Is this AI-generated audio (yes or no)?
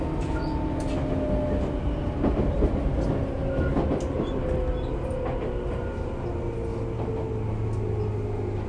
no